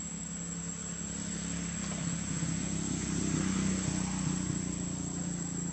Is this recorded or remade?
recorded